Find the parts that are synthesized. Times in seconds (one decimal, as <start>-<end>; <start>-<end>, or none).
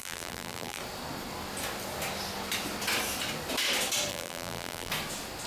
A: 0.0-0.8; 4.1-4.9